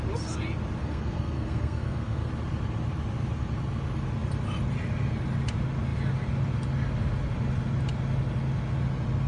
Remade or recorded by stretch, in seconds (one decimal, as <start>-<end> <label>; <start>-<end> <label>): 0.0-0.8 recorded; 0.8-2.3 remade; 2.3-9.3 recorded